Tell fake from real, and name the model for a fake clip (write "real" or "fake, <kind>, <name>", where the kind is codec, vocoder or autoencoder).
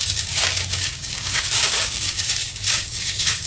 fake, codec, DAC